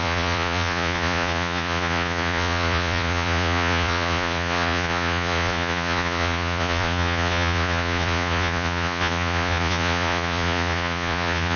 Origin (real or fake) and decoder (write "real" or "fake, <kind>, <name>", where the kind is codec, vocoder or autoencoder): fake, vocoder, Vocos